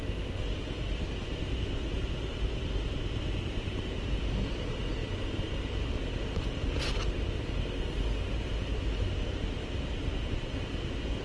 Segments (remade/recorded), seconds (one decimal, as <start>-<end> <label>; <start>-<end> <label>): 0.0-11.2 recorded